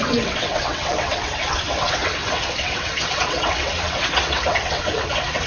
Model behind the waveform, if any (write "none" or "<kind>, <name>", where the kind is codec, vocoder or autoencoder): vocoder, WaveNeXt